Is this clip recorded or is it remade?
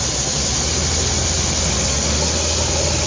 recorded